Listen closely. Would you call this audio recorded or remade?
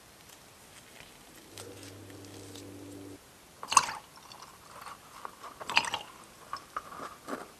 recorded